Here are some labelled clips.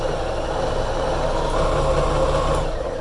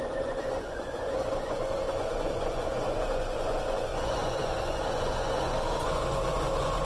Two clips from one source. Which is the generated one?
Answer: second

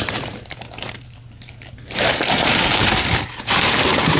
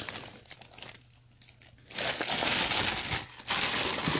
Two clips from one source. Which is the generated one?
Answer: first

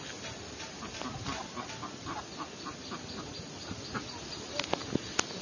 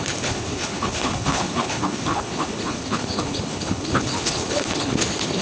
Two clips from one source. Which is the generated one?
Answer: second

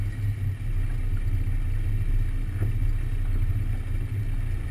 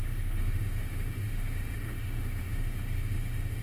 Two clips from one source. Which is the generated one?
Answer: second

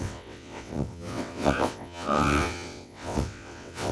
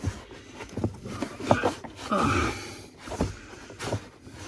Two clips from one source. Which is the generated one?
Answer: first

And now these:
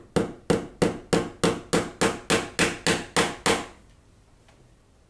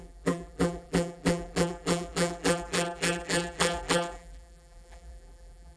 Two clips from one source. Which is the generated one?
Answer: second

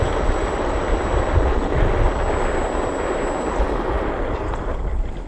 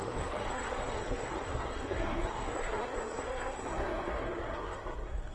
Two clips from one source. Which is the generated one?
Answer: second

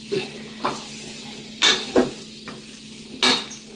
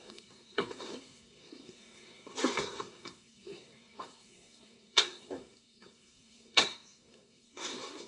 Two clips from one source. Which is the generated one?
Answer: second